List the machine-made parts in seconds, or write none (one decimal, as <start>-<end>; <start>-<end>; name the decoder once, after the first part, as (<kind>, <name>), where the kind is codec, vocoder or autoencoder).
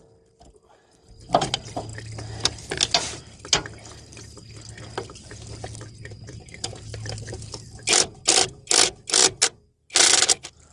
none